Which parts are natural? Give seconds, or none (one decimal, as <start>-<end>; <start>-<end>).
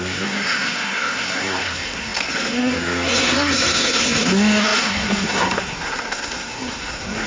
none